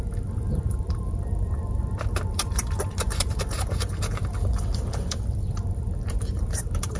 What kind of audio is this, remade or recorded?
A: remade